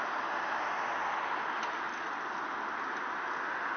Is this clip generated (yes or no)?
no